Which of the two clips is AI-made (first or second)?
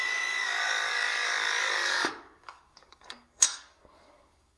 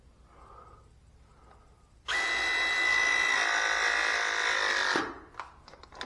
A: first